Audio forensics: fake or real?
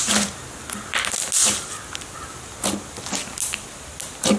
real